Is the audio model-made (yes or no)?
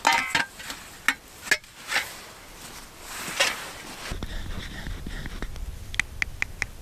no